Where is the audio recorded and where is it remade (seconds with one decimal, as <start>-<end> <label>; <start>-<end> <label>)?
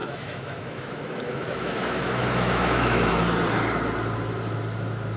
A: 0.0-3.1 remade; 3.1-5.2 recorded